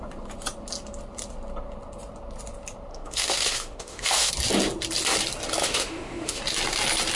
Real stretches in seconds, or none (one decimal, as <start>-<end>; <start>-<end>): 0.0-2.9; 4.3-5.6; 6.4-7.2